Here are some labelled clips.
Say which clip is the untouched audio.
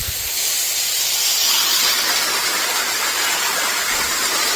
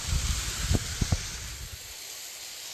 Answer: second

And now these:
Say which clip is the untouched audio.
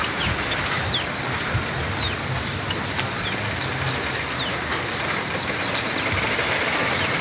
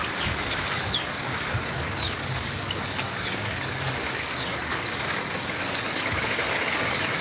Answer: first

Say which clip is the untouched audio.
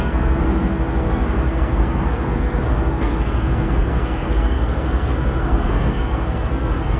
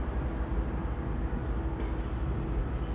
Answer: second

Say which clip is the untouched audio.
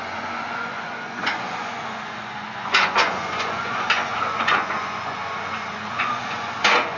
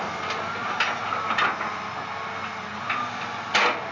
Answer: second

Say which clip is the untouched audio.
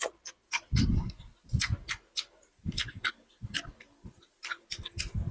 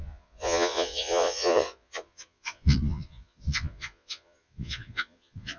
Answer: first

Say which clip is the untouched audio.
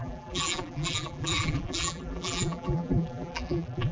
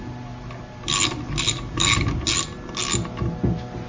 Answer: second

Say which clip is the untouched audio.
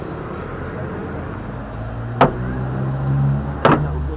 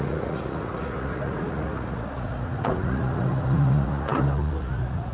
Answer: first